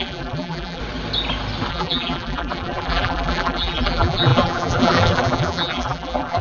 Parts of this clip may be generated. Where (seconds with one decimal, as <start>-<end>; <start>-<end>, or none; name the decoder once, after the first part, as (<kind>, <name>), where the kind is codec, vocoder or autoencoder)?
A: 0.0-0.8 (vocoder, BigVGAN v2); 1.7-6.4

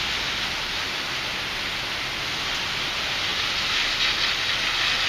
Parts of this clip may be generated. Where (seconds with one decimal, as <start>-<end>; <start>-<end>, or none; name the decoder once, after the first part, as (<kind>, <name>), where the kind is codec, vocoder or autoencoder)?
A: none